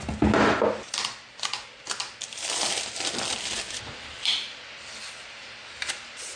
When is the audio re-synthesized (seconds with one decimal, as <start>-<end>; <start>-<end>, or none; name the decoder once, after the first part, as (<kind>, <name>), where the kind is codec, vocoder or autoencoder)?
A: none